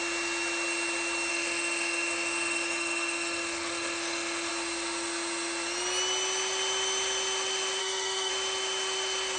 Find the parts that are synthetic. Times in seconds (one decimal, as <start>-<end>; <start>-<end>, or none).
1.3-4.5; 7.8-8.3